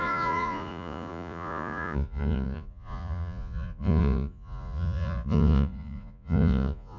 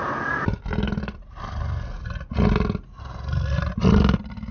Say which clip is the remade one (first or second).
first